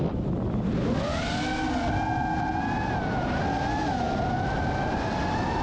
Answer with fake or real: real